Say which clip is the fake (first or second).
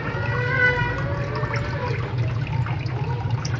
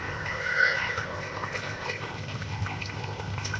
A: second